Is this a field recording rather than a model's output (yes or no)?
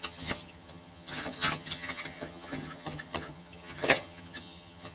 no